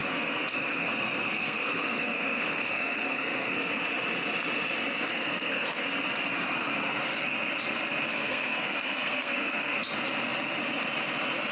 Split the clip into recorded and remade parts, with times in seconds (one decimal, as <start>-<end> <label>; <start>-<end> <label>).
0.0-3.7 remade; 3.7-5.1 recorded; 5.1-5.9 remade; 5.9-8.1 recorded; 8.1-9.8 remade; 9.8-11.5 recorded